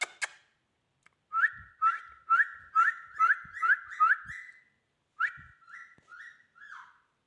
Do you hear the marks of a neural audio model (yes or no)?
no